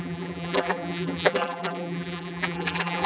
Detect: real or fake fake